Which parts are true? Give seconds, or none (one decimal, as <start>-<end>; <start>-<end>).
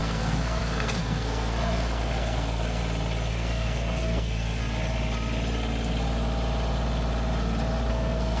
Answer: 2.8-3.3; 4.6-7.9